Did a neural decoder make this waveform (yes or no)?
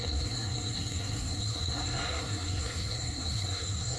yes